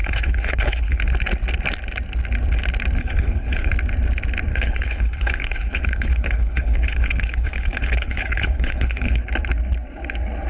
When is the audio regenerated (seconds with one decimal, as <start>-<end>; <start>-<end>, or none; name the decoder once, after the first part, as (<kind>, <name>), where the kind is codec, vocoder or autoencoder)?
0.0-1.0 (codec, HILCodec); 3.0-3.7; 4.5-9.2

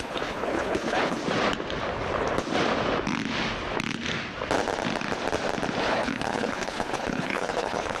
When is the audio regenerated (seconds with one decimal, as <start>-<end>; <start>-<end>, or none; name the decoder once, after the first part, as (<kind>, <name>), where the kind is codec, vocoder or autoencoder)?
0.0-1.2 (codec, HILCodec); 5.8-8.0

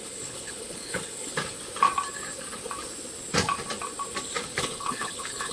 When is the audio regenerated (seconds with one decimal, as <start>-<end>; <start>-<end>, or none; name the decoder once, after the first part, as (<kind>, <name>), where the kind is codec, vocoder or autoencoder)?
0.0-1.3 (codec, HILCodec); 4.6-5.5

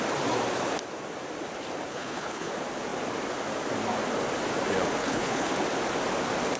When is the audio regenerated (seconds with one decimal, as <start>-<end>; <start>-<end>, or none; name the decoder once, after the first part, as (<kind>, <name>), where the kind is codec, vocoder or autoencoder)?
1.9-2.5 (codec, HILCodec); 5.0-5.5